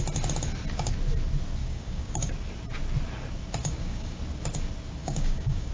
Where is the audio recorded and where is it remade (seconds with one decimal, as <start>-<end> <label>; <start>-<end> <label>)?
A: 0.0-1.6 recorded; 1.6-2.3 remade; 2.3-3.6 recorded; 3.6-4.2 remade; 4.2-5.0 recorded; 5.0-5.7 remade